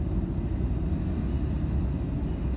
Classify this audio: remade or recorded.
recorded